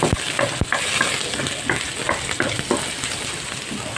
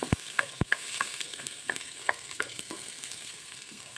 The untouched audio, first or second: first